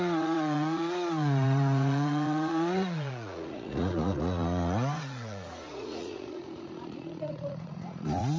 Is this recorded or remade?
remade